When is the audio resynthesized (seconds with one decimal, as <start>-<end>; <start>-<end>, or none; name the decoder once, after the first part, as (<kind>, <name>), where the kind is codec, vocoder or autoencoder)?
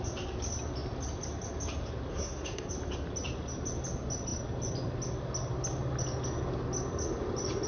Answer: 2.1-2.7 (codec, SNAC)